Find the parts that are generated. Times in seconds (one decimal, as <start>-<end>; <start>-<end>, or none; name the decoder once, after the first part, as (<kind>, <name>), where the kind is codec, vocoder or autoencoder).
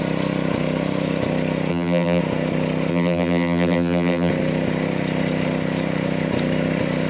1.7-2.2 (vocoder, BigVGAN v2); 2.9-4.3